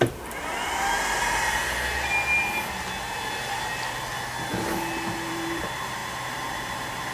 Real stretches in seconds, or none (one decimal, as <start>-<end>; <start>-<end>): 1.6-5.3